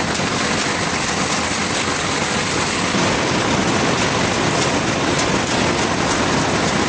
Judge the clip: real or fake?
real